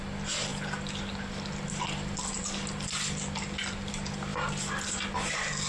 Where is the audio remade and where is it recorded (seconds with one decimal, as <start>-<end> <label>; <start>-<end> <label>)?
0.0-5.7 recorded